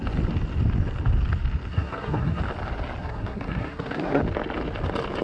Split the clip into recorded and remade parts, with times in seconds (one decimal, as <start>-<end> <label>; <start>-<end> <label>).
0.0-1.7 recorded; 1.7-2.4 remade; 2.4-3.0 recorded; 3.0-4.2 remade; 4.2-5.2 recorded